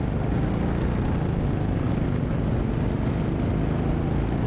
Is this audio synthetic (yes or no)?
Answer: no